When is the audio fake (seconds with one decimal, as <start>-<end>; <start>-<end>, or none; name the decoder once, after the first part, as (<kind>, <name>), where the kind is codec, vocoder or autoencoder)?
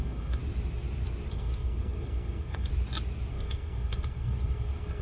0.0-0.4 (codec, SNAC); 1.3-2.7; 3.3-5.0